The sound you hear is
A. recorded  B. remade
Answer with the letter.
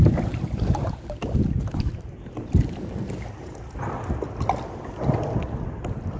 A